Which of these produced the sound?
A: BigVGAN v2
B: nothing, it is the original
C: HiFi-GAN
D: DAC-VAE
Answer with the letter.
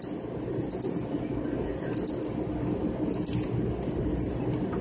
B